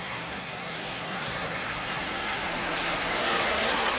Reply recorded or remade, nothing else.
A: remade